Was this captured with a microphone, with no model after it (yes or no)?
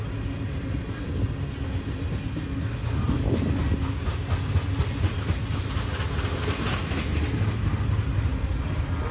yes